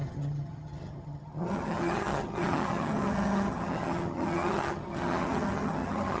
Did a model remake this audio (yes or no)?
yes